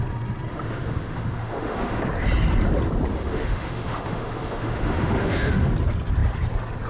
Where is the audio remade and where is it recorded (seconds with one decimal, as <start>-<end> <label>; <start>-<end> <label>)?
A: 0.0-0.5 recorded; 0.5-2.0 remade; 2.0-3.1 recorded; 3.1-5.7 remade; 5.7-6.9 recorded